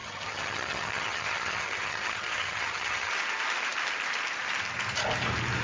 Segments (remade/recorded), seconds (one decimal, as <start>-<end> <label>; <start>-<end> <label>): 0.0-3.1 remade; 3.1-5.6 recorded